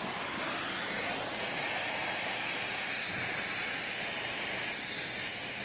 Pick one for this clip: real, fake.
real